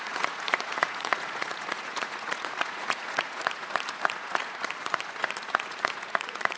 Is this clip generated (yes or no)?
yes